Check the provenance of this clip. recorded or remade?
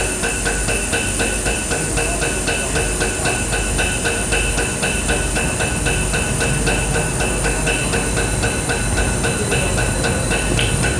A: recorded